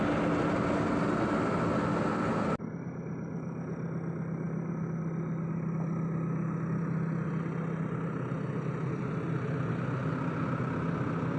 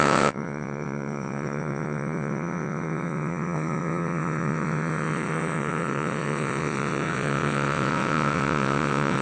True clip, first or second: first